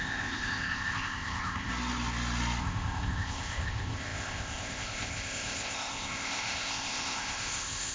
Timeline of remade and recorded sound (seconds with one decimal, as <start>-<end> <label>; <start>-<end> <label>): 0.0-1.7 remade; 1.7-2.6 recorded; 2.6-7.9 remade